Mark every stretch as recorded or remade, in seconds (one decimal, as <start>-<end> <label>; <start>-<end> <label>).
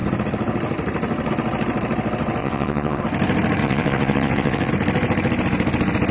0.0-2.4 recorded; 2.4-3.0 remade; 3.0-3.6 recorded; 3.6-4.7 remade; 4.7-6.1 recorded